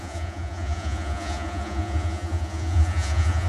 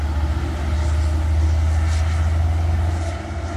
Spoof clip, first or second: first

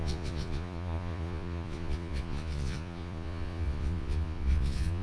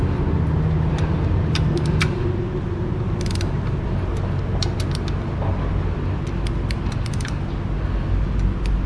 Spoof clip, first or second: first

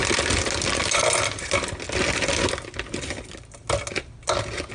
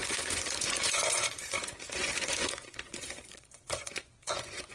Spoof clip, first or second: second